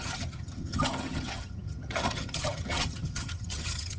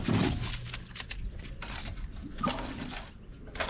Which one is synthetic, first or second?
first